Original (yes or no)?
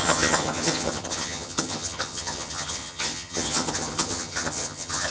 no